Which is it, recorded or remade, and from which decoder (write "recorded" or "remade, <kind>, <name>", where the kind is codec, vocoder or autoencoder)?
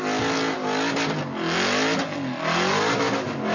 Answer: recorded